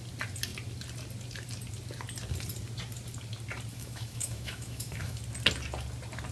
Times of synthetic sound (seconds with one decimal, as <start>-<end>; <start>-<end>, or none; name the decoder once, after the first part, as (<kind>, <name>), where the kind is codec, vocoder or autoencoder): 3.7-5.2 (autoencoder, DAC-VAE)